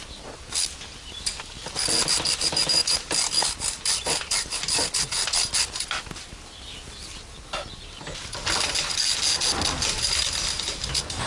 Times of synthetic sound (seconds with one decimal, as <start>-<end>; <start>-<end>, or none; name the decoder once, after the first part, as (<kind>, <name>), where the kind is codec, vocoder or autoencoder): none